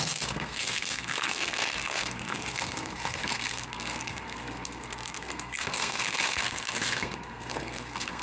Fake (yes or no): yes